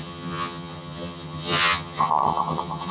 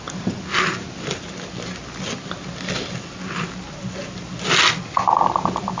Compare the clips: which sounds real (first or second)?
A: second